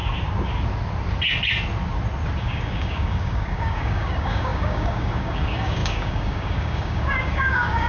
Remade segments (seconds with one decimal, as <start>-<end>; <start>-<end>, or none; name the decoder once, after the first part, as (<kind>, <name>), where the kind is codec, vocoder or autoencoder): 2.4-7.9 (codec, DAC)